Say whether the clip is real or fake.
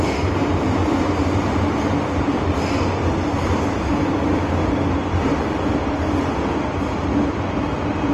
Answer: real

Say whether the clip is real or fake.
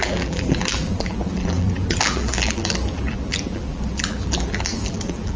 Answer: fake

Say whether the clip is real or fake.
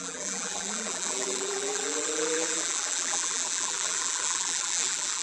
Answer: fake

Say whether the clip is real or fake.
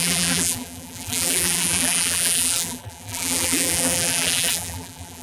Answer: fake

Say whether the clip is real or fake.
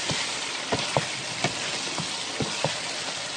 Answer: real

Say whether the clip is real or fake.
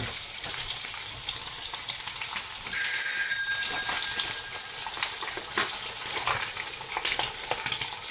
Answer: fake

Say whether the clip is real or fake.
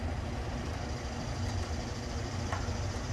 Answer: fake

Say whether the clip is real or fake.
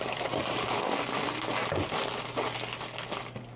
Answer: real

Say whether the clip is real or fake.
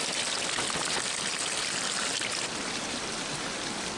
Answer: real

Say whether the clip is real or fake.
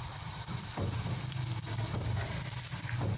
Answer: fake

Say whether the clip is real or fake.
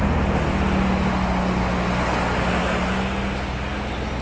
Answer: real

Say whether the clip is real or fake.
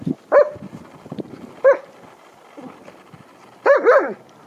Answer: real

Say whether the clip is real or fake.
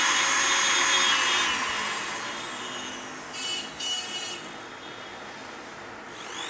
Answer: real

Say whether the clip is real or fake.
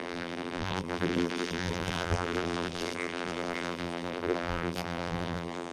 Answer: fake